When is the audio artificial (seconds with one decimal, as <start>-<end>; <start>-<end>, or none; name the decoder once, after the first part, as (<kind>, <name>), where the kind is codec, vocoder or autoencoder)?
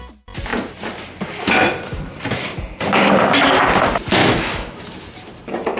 4.2-4.8 (autoencoder, DAC-VAE)